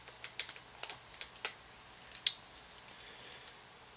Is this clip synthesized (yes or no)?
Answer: no